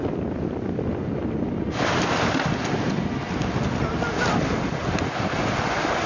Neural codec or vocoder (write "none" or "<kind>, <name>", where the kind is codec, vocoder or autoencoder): none